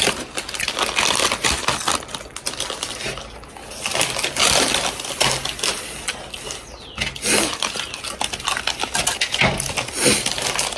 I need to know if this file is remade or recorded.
recorded